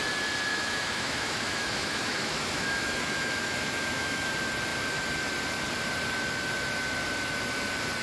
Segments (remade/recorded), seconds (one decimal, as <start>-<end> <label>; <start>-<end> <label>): 0.0-0.5 recorded; 0.5-4.3 remade; 4.3-8.0 recorded